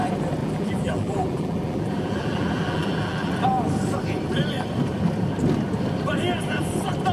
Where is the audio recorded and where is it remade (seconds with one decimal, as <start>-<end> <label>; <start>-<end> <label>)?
0.0-0.4 recorded; 0.4-3.3 remade; 3.3-7.1 recorded